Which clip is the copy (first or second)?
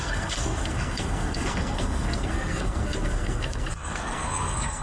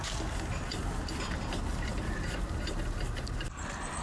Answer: first